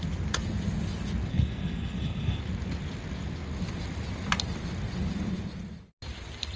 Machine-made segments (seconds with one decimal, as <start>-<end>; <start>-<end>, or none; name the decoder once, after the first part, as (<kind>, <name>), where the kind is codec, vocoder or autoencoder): 1.3-2.4 (codec, SNAC)